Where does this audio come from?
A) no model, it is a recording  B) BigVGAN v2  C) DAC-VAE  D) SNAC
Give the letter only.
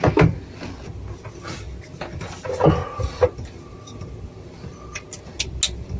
A